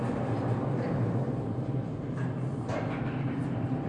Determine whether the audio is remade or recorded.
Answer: remade